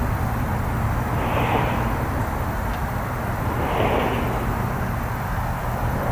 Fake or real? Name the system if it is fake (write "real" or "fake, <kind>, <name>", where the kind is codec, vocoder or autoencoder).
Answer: real